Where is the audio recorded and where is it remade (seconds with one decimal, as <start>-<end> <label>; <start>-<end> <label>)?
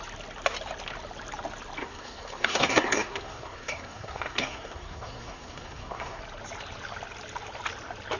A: 0.0-1.8 recorded; 1.8-6.2 remade; 6.2-8.2 recorded